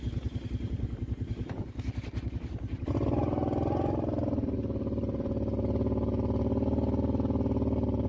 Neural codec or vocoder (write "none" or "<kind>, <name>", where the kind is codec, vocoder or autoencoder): none